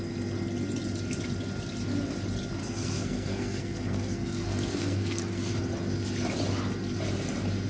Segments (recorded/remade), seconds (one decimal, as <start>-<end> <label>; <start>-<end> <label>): 0.0-2.6 recorded; 2.6-5.5 remade; 5.5-7.7 recorded